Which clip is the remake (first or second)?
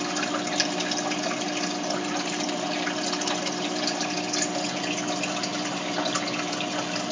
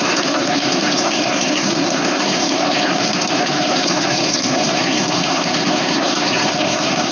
second